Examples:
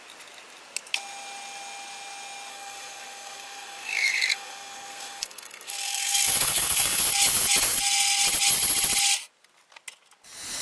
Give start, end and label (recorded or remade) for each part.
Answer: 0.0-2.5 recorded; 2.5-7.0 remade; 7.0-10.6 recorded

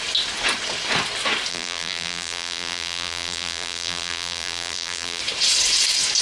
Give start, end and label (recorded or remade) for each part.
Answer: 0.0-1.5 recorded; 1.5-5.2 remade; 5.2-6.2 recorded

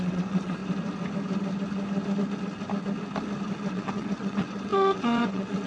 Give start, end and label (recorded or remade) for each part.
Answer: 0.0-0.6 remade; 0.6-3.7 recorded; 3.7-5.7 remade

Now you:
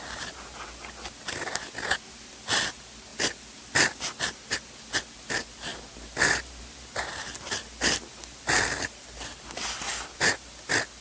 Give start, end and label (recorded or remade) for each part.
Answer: 0.0-11.0 recorded

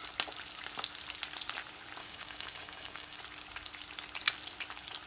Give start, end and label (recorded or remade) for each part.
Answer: 0.0-2.0 recorded; 2.0-3.2 remade; 3.2-5.1 recorded